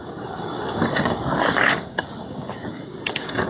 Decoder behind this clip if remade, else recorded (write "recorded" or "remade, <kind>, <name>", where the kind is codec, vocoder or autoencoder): remade, codec, DAC